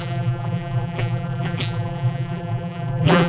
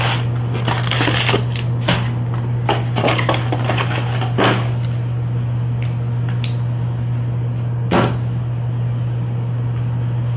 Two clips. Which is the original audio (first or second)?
second